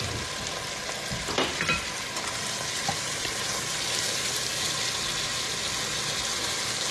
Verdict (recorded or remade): recorded